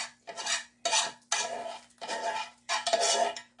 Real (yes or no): yes